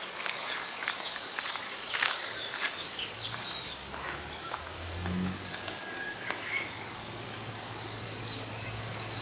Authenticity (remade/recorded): remade